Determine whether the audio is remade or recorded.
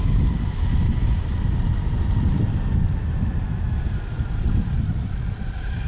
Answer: recorded